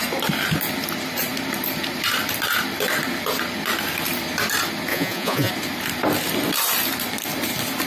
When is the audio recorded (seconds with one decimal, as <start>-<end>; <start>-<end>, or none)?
0.0-4.9; 5.5-7.9

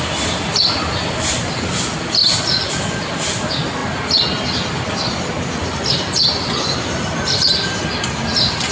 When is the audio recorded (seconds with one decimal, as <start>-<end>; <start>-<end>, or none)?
0.0-8.7